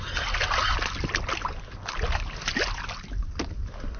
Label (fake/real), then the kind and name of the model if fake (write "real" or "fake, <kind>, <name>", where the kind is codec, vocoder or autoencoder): real